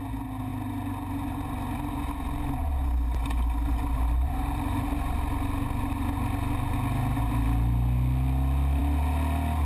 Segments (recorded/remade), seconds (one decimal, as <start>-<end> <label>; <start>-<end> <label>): 0.0-9.7 recorded